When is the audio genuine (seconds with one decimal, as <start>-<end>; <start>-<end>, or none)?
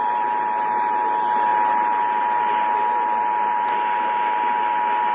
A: 0.0-5.1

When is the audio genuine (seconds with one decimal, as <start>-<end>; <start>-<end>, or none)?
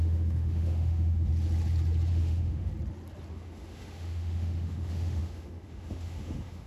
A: 1.3-2.1; 2.7-3.3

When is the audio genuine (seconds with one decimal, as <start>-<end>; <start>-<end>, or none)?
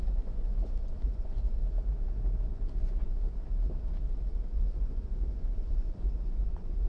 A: 1.6-2.5; 3.1-4.5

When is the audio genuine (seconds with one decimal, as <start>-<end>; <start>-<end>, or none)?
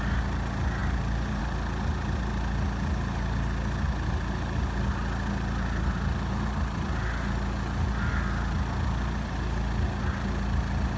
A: 0.0-11.0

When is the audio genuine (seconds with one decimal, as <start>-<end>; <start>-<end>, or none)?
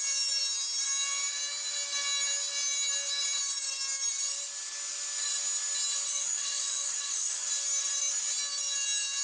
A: 0.0-6.1; 7.5-9.2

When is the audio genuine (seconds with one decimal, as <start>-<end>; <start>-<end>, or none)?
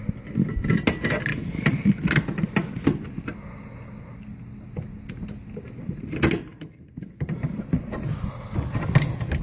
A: 0.0-1.3; 1.9-6.5; 7.6-9.4